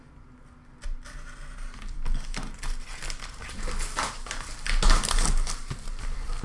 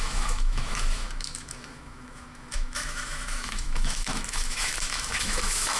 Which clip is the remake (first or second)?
second